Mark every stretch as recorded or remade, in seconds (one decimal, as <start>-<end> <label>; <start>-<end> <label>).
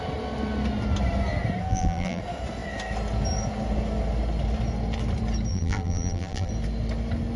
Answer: 0.0-1.7 recorded; 1.7-2.2 remade; 2.2-5.5 recorded; 5.5-6.5 remade; 6.5-7.4 recorded